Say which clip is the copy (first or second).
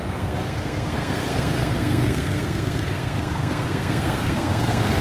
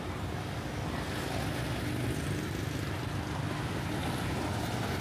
first